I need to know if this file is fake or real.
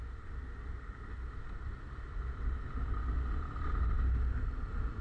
real